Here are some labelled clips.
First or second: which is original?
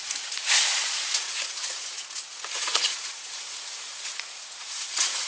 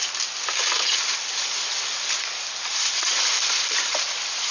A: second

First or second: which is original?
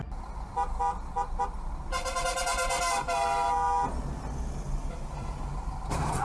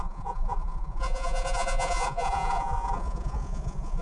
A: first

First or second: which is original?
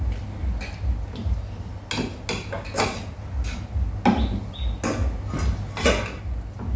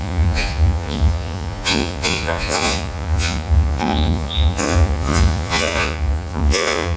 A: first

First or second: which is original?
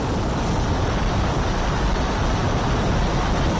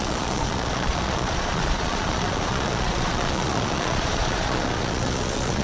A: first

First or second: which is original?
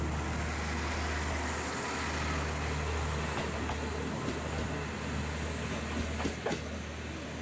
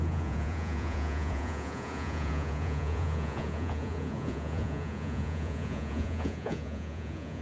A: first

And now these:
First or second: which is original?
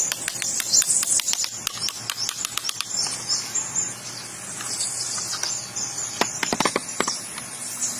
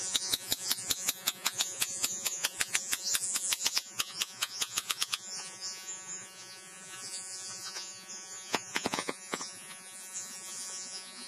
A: first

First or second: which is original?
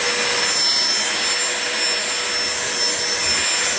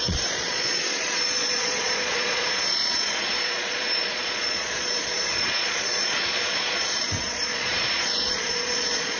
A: first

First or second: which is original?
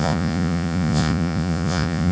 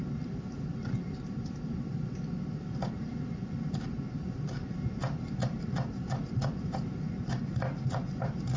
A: second